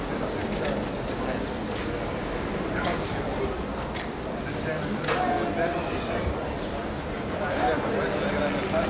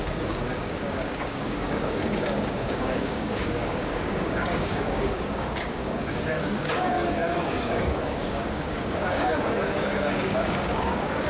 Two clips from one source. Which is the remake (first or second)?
second